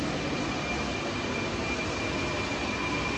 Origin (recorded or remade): recorded